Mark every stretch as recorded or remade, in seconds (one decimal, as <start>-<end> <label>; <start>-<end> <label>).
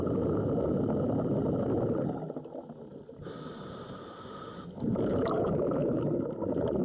0.0-2.9 recorded; 2.9-5.9 remade; 5.9-6.8 recorded